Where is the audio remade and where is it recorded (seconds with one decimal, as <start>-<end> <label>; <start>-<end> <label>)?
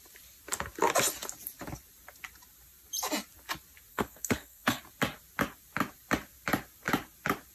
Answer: 0.0-3.9 recorded; 3.9-4.8 remade; 4.8-7.5 recorded